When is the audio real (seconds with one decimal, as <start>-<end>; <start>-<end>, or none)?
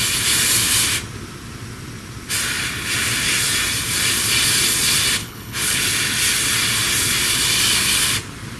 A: 0.0-5.2; 5.8-8.6